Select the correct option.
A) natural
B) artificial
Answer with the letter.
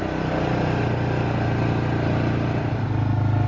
A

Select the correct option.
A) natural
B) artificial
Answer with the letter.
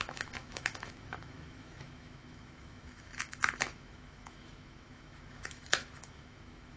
B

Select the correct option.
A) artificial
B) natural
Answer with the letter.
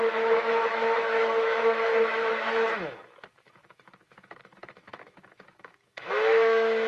A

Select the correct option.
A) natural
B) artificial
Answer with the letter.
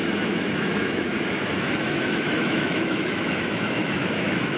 B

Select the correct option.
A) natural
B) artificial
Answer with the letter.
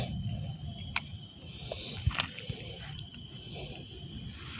A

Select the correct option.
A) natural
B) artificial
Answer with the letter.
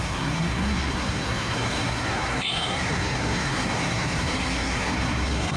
B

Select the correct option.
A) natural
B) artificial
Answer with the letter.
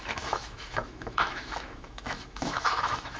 B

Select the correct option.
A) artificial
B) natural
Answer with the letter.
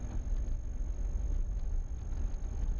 B